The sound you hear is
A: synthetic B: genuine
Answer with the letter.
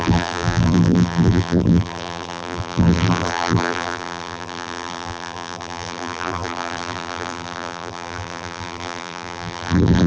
A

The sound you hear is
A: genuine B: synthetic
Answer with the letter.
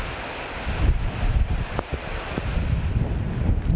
A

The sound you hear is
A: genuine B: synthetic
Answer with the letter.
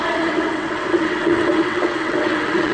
B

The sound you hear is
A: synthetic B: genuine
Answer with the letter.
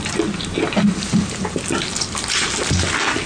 B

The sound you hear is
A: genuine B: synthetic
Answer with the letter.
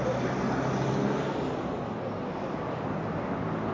A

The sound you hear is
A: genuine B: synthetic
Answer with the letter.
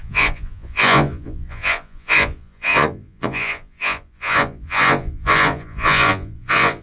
B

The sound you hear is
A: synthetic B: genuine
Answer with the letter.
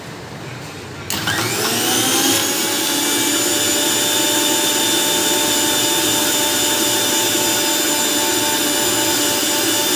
B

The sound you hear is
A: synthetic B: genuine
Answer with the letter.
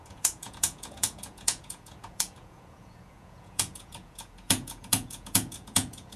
A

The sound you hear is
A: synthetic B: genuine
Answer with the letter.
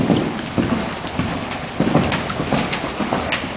B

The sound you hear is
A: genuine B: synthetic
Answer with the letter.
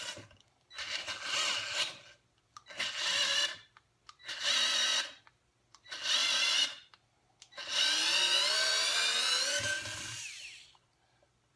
B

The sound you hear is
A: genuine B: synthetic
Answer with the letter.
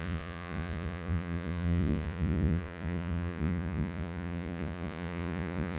B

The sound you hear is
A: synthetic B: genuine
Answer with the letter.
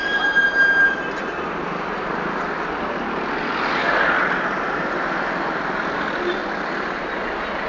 B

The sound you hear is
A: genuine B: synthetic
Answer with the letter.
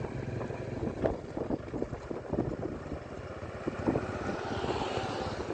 A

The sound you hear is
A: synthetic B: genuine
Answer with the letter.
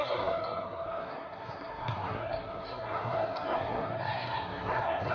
A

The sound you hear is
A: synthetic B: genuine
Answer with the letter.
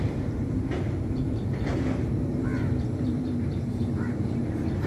A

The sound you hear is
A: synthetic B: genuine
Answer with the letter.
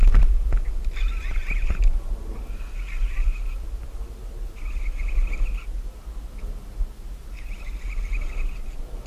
B